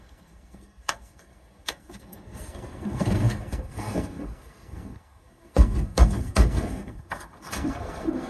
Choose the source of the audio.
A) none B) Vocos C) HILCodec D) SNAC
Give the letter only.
D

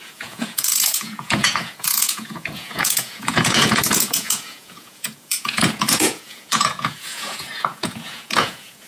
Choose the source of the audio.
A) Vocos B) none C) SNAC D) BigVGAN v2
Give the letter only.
A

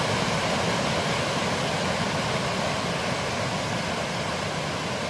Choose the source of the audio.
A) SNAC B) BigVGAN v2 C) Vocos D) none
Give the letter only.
D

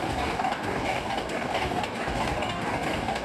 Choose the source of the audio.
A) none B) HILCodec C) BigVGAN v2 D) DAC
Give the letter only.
D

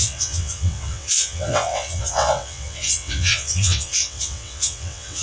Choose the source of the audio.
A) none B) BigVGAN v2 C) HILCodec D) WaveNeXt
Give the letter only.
D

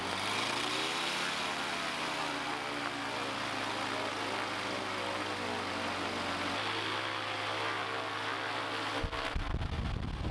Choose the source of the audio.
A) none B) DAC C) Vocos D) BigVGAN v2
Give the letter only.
A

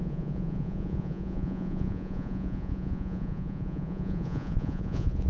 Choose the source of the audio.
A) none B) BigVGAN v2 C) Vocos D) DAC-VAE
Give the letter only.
C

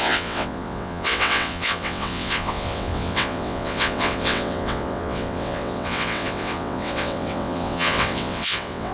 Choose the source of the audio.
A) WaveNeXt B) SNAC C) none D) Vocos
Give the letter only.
A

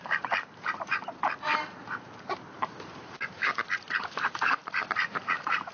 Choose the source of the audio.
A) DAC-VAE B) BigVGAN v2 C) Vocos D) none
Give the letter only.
B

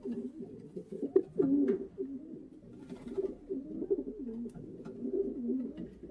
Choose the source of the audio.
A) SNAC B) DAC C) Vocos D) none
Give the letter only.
D